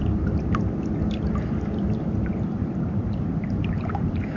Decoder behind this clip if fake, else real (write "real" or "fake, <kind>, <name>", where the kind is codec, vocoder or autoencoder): real